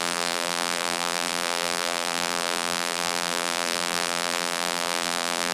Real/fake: fake